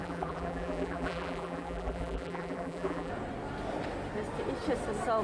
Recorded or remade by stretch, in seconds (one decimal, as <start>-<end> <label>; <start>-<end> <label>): 0.0-3.1 remade; 3.1-5.2 recorded